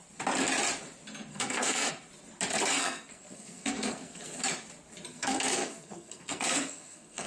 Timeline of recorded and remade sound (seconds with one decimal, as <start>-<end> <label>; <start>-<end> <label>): 0.0-1.3 recorded; 1.3-1.9 remade; 1.9-2.8 recorded; 2.8-4.4 remade; 4.4-5.1 recorded; 5.1-7.3 remade